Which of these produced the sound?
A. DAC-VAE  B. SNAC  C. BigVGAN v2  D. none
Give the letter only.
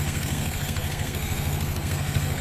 B